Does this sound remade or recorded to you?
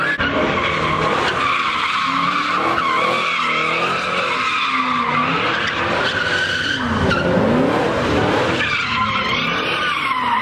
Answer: recorded